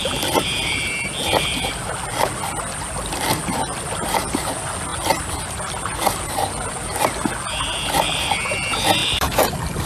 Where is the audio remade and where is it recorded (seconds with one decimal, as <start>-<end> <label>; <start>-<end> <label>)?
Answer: 0.0-9.0 recorded; 9.0-9.9 remade